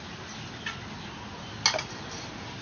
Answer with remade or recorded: recorded